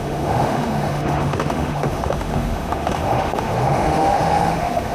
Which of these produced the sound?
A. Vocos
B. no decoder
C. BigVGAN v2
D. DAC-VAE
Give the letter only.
D